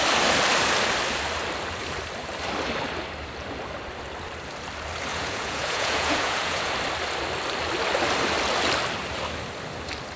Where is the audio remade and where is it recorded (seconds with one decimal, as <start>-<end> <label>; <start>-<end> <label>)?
0.0-5.1 recorded; 5.1-6.7 remade; 6.7-10.2 recorded